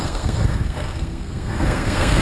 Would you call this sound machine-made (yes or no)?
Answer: yes